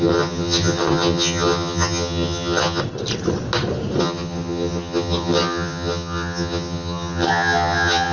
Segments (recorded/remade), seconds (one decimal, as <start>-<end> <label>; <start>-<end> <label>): 0.0-2.8 remade; 2.8-4.0 recorded; 4.0-8.1 remade